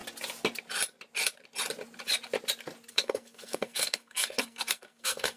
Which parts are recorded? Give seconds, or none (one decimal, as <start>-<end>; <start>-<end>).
0.0-2.9